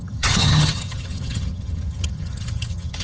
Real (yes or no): no